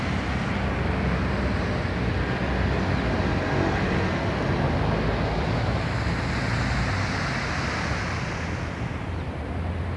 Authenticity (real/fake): real